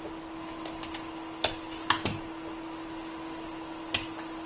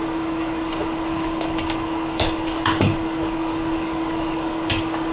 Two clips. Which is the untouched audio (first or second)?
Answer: first